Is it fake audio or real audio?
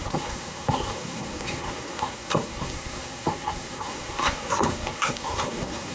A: fake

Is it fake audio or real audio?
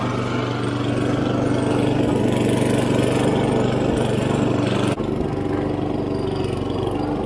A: real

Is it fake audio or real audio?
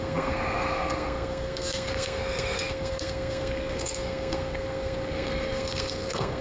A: fake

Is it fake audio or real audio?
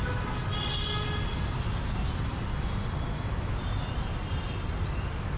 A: real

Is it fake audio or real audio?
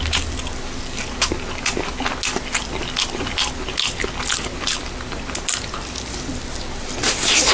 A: real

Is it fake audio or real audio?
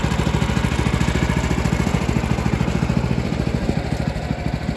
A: real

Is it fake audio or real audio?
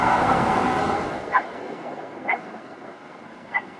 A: fake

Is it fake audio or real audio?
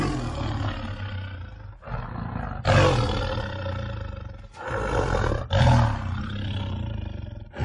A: real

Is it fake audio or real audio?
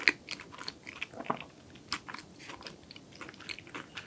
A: real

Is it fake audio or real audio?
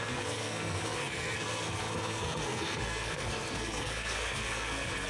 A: fake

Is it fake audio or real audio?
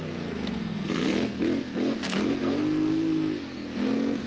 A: fake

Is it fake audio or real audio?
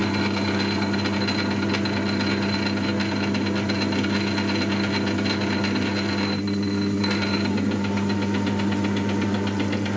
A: real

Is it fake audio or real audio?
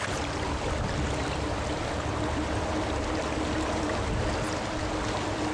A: real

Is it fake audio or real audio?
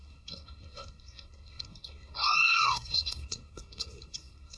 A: fake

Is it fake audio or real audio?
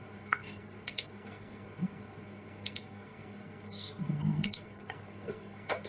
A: fake